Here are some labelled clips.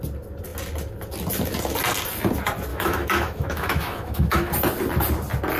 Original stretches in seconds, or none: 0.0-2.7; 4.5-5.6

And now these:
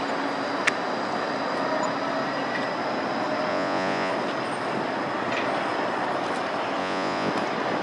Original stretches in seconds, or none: 0.0-3.5; 4.1-6.8; 7.3-7.8

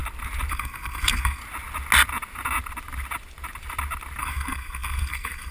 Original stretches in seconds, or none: 0.0-0.5; 1.4-4.2

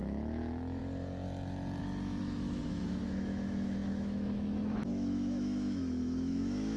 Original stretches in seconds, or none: 0.8-1.8

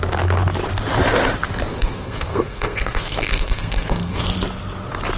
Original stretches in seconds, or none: 0.0-1.7; 4.2-5.2

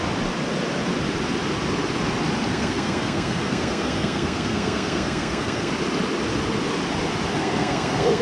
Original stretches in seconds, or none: 0.0-2.5; 5.7-7.4

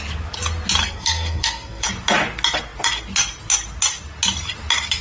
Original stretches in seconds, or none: 0.0-0.8; 1.9-5.0

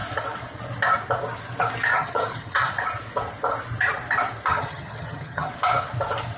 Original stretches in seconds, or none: 0.0-1.9; 2.7-4.5; 5.5-6.4